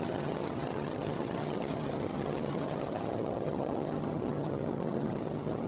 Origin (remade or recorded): remade